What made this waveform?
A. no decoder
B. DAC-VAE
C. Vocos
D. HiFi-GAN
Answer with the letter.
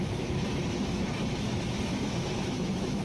B